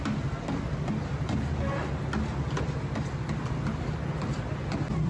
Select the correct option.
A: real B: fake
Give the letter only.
A